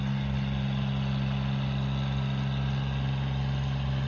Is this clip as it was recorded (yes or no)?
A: yes